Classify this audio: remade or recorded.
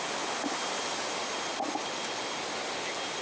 recorded